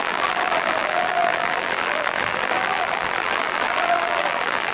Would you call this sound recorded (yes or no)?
no